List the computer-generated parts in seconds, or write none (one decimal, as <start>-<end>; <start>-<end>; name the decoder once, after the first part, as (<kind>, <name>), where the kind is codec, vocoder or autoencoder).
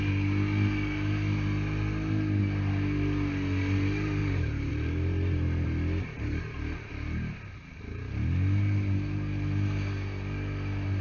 4.2-4.7 (vocoder, BigVGAN v2)